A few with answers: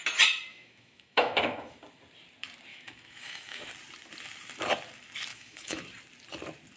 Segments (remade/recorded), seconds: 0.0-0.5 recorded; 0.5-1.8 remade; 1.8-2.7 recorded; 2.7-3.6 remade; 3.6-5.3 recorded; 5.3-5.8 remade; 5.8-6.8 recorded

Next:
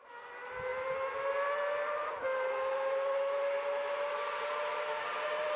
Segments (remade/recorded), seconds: 0.0-5.6 recorded

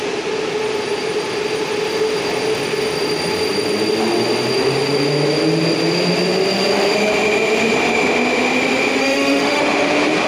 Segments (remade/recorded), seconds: 0.0-9.0 recorded; 9.0-9.6 remade; 9.6-10.3 recorded

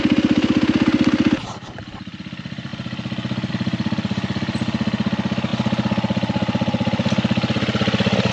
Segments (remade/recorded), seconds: 0.0-8.3 recorded

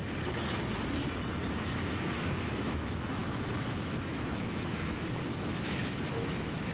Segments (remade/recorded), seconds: 0.0-1.6 recorded; 1.6-6.7 remade

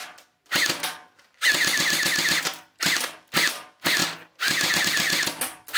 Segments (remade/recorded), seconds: 0.0-5.8 recorded

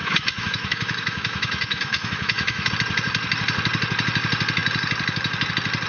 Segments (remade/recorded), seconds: 0.0-2.7 remade; 2.7-5.9 recorded